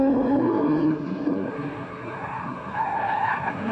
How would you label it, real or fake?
fake